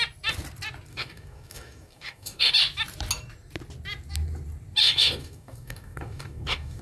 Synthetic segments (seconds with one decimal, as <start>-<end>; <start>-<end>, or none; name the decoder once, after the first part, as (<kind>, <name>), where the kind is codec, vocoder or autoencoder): 0.9-2.5 (codec, DAC); 4.8-6.8